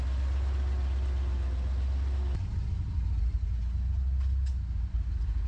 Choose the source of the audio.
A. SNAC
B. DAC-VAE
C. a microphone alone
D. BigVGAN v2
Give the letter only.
C